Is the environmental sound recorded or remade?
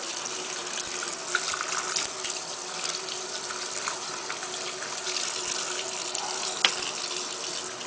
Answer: recorded